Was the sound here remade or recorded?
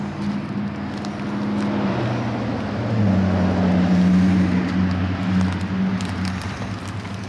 recorded